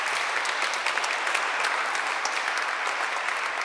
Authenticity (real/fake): real